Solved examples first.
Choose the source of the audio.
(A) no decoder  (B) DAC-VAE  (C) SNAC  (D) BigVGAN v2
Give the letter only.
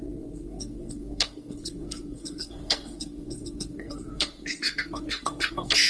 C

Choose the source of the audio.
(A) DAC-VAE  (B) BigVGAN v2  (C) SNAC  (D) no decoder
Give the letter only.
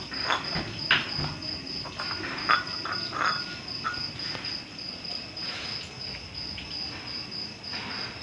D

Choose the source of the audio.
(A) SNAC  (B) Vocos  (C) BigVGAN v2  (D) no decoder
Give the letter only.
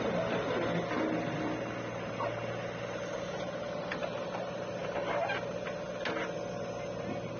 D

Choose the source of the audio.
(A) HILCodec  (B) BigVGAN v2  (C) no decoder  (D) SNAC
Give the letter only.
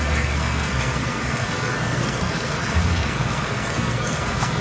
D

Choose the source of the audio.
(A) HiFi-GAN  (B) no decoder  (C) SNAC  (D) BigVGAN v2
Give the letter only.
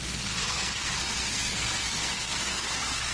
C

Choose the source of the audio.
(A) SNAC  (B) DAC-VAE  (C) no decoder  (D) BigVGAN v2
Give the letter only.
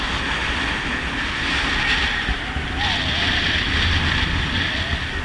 C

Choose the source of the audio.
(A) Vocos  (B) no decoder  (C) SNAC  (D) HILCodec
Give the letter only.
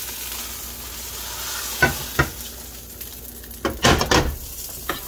B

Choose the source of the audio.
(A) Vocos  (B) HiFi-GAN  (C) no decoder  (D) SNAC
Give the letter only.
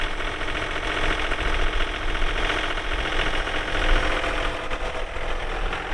C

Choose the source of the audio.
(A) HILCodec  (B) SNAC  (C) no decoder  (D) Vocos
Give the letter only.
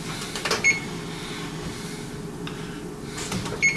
C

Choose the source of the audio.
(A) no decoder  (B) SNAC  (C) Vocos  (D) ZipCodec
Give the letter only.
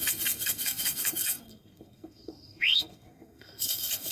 B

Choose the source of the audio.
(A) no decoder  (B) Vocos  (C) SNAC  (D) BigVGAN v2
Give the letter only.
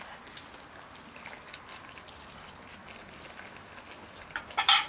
A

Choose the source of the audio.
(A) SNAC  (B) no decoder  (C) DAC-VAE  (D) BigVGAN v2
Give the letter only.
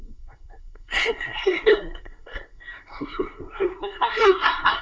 A